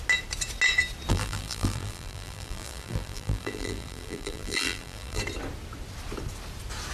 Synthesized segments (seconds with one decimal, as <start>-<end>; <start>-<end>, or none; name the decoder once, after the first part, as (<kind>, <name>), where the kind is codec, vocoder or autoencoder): 1.1-5.2 (vocoder, BigVGAN v2)